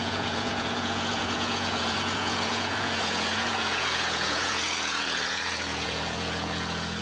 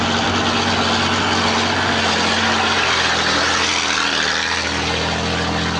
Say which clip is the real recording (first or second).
second